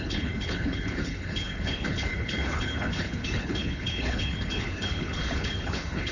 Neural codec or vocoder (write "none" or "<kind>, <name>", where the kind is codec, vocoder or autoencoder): codec, HILCodec